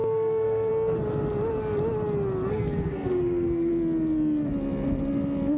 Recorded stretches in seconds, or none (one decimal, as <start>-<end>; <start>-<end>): 0.7-2.5; 3.7-5.6